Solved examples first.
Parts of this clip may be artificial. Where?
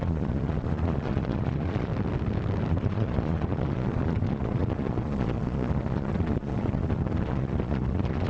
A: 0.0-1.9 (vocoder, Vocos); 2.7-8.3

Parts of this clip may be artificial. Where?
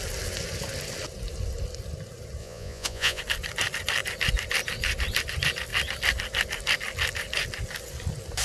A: 2.4-3.2 (vocoder, Vocos)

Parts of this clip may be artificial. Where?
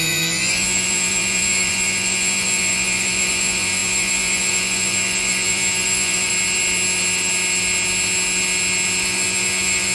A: 0.0-6.3 (vocoder, Vocos); 9.0-9.9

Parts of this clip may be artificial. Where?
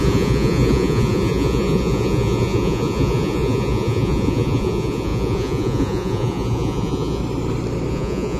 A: 0.0-7.2 (vocoder, Vocos); 7.9-8.4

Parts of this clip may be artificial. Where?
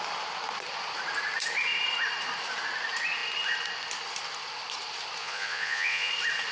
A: 5.2-6.1 (vocoder, Vocos)